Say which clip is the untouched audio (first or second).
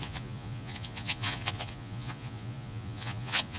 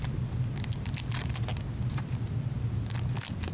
second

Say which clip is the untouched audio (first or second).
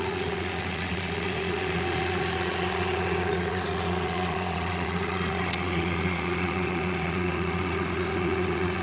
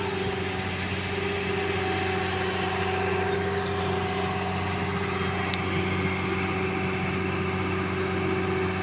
second